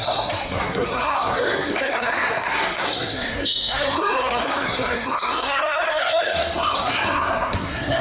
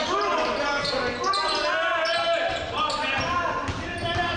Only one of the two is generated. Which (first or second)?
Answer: first